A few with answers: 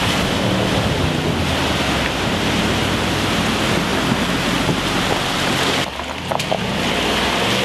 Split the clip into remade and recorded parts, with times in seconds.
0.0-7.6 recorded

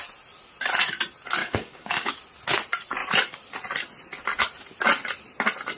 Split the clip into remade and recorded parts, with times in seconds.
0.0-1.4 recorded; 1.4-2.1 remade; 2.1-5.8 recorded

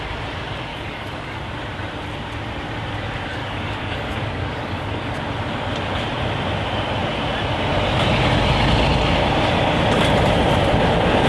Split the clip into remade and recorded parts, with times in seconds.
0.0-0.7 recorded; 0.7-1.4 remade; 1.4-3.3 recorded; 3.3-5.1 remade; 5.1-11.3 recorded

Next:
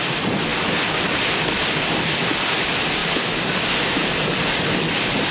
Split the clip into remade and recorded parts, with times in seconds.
0.0-1.6 recorded; 1.6-2.3 remade; 2.3-3.0 recorded; 3.0-4.7 remade; 4.7-5.3 recorded

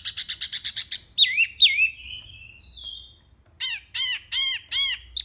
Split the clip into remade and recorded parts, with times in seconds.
0.0-5.2 recorded

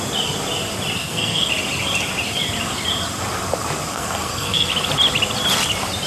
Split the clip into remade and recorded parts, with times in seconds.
0.0-1.0 recorded; 1.0-1.5 remade; 1.5-3.9 recorded; 3.9-4.7 remade; 4.7-6.1 recorded

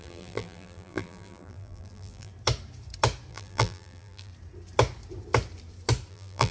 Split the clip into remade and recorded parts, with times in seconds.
0.0-2.3 remade; 2.3-3.3 recorded; 3.3-4.3 remade; 4.3-6.1 recorded; 6.1-6.5 remade